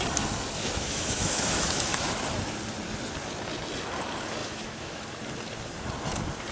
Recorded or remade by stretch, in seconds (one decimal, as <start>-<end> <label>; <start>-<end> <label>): 0.0-0.6 recorded; 0.6-2.1 remade; 2.1-4.4 recorded; 4.4-5.1 remade; 5.1-6.5 recorded